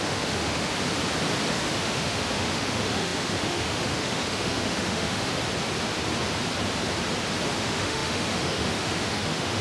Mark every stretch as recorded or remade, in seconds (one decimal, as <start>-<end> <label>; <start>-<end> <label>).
0.0-0.7 remade; 0.7-1.5 recorded; 1.5-5.4 remade; 5.4-7.6 recorded; 7.6-9.6 remade